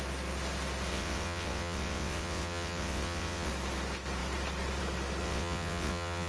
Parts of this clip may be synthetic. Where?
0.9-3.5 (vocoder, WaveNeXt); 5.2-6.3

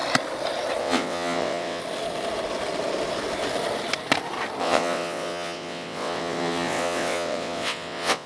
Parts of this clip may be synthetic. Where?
0.8-1.8 (vocoder, WaveNeXt); 4.6-8.3

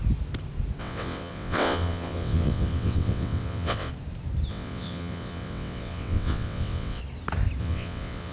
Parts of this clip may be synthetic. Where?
0.8-3.9 (vocoder, WaveNeXt); 4.5-7.0; 7.6-8.3

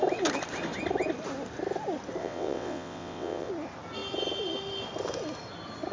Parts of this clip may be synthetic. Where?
2.2-3.5 (vocoder, WaveNeXt)